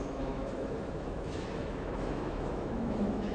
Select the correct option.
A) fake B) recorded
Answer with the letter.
A